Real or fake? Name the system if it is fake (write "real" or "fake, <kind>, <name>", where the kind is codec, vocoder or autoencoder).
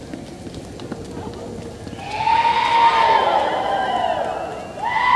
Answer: real